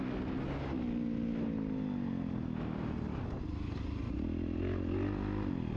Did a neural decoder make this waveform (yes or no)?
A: no